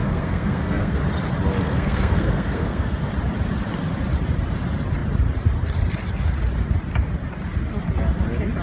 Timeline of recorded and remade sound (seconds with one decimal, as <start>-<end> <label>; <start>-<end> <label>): 0.0-1.0 remade; 1.0-1.6 recorded; 1.6-3.1 remade; 3.1-8.6 recorded